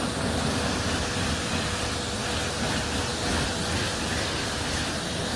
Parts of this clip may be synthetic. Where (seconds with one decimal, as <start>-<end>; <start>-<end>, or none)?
none